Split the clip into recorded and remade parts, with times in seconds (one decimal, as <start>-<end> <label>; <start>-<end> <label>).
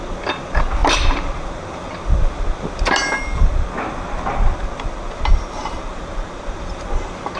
0.0-5.6 recorded; 5.6-6.7 remade; 6.7-7.4 recorded